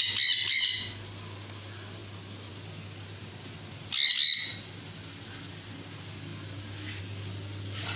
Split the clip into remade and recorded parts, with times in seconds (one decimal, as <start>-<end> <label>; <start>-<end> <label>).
0.0-8.0 recorded

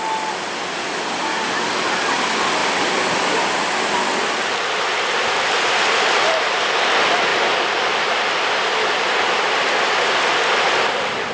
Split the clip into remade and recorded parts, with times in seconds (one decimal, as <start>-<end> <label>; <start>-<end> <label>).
0.0-11.3 recorded

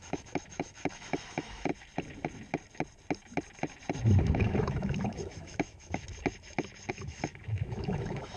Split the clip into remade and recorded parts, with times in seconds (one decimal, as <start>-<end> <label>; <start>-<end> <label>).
0.0-1.7 remade; 1.7-4.2 recorded; 4.2-6.1 remade; 6.1-6.9 recorded; 6.9-8.4 remade